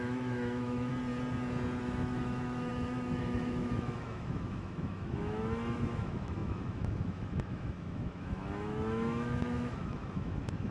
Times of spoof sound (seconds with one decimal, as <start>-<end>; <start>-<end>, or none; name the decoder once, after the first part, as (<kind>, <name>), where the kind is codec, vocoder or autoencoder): 0.0-0.9 (autoencoder, DAC-VAE); 1.8-10.7